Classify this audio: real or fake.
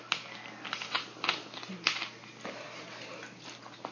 real